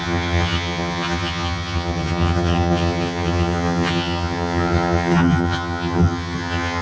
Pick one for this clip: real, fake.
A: fake